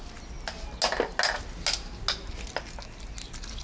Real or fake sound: real